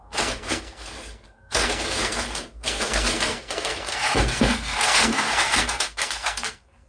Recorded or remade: remade